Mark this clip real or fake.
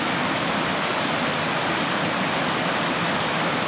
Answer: real